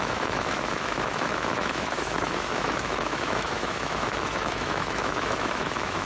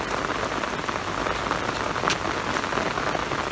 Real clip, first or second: second